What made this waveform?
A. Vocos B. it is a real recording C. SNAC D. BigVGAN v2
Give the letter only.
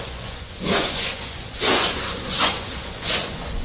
A